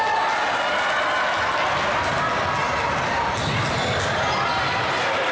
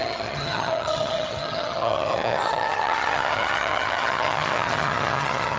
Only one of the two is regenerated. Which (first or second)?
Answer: second